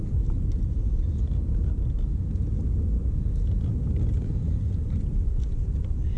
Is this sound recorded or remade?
recorded